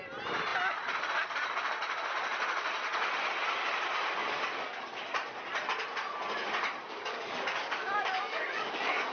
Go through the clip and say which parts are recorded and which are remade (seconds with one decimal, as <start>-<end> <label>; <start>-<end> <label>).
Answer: 0.0-4.2 recorded; 4.2-4.8 remade; 4.8-6.8 recorded; 6.8-9.1 remade